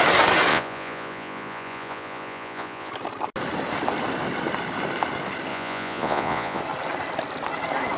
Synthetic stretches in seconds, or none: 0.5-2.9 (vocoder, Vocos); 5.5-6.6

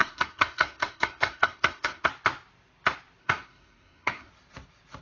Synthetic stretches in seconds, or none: 0.0-2.1 (codec, SNAC); 3.2-4.3

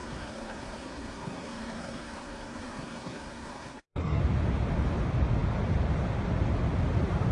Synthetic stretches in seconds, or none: 0.0-4.2 (codec, SNAC)

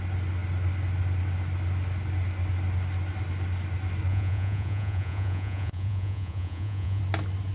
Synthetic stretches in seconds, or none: 4.1-7.0 (vocoder, Vocos)

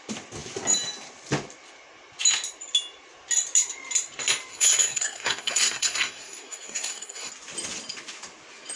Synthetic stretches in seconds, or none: 4.5-7.3 (codec, SNAC)

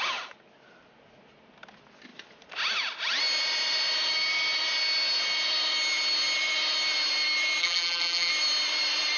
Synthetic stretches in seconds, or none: 7.6-8.3 (vocoder, BigVGAN v2)